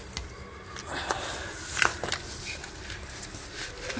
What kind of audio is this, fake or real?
real